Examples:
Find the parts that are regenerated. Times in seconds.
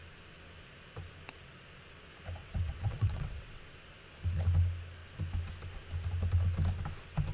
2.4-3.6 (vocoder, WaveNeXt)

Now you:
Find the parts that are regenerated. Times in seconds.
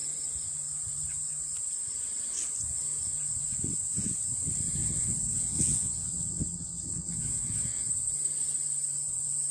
4.8-7.8 (vocoder, WaveNeXt)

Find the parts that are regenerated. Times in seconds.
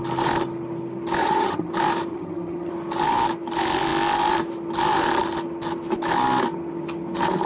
1.2-1.7 (vocoder, HiFi-GAN); 2.1-2.7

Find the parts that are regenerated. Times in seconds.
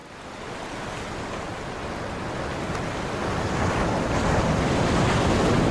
0.7-1.5 (vocoder, BigVGAN v2); 2.9-5.7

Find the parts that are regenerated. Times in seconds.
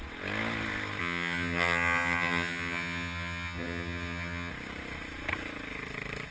1.0-4.5 (vocoder, HiFi-GAN)